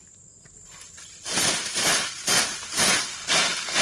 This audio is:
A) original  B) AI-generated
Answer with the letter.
B